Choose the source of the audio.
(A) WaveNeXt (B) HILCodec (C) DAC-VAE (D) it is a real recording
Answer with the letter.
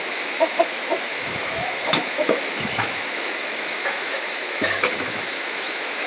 C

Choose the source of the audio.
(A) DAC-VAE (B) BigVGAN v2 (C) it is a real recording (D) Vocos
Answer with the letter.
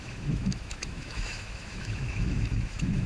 A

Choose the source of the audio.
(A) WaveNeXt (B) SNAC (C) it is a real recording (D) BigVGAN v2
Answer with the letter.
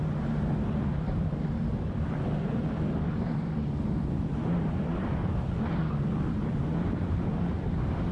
D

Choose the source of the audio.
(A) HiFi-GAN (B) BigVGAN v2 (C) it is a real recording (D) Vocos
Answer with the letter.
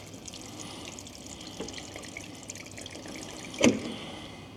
C